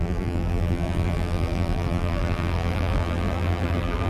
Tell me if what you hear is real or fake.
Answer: fake